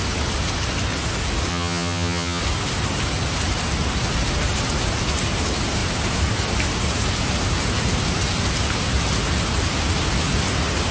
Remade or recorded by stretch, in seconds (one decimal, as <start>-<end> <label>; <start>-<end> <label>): 0.0-1.5 recorded; 1.5-2.4 remade; 2.4-10.9 recorded